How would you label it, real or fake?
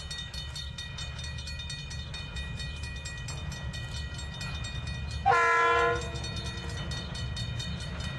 real